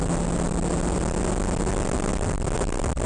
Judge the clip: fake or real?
real